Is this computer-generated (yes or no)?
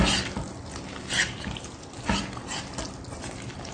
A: no